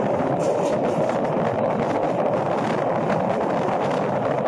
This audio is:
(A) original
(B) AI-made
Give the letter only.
A